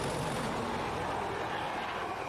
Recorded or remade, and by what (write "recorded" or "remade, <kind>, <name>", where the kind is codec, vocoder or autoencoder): recorded